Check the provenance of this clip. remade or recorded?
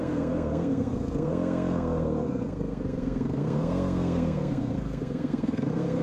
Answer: remade